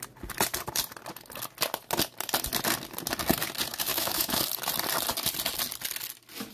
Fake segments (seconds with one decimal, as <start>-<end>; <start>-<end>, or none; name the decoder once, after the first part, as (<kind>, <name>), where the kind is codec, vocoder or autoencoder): 3.9-4.4 (autoencoder, DAC-VAE)